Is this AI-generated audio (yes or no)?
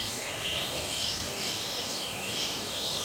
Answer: yes